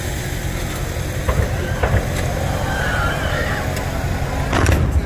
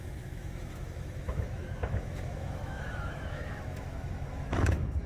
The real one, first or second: first